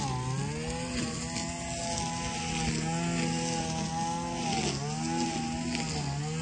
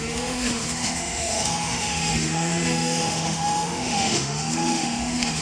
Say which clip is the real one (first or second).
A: first